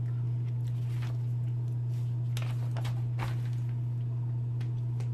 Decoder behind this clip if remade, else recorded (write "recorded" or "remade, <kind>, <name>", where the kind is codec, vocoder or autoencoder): recorded